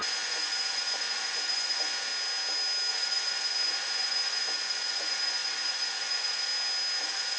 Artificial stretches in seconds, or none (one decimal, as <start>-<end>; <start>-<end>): 0.0-2.1; 2.9-6.5; 7.0-7.4